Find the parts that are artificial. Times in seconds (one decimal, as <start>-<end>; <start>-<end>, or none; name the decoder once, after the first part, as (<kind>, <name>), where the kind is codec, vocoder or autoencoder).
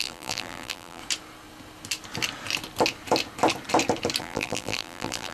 0.0-1.0 (vocoder, BigVGAN v2); 4.2-5.3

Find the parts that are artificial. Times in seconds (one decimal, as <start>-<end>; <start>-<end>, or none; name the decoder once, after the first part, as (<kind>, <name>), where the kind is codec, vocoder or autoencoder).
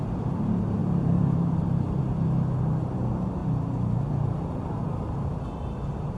0.8-2.0 (vocoder, BigVGAN v2); 3.4-4.1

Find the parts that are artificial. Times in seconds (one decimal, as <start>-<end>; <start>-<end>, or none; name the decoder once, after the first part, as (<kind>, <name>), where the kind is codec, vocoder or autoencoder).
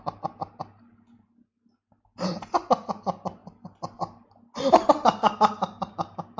none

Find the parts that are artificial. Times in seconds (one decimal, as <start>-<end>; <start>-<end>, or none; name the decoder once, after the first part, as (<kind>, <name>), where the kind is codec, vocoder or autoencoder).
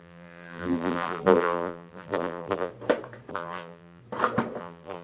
0.0-2.7 (vocoder, BigVGAN v2); 3.3-4.0; 4.6-5.0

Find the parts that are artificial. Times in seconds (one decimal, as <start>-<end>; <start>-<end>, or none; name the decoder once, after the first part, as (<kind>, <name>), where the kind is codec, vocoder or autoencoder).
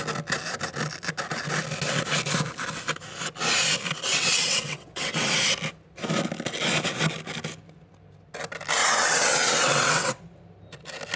4.1-5.3 (vocoder, WaveNeXt); 8.8-10.2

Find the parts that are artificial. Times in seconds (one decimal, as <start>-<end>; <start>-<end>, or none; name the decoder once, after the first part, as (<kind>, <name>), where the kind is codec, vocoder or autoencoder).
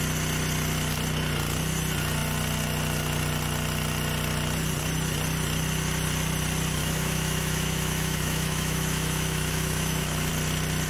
6.8-10.3 (autoencoder, DAC-VAE)